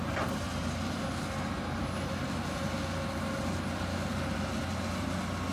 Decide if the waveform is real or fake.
real